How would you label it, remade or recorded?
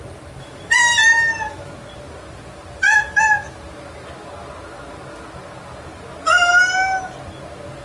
recorded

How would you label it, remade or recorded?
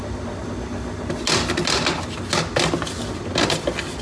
recorded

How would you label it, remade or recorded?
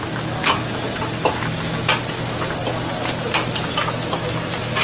recorded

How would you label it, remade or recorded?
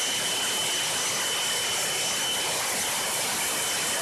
recorded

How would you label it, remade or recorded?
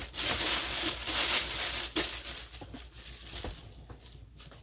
recorded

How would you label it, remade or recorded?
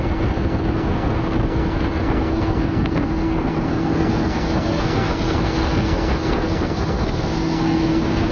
remade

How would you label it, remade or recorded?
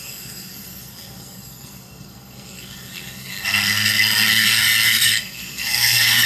remade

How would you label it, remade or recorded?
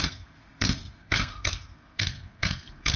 remade